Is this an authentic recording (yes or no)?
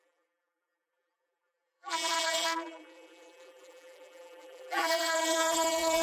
no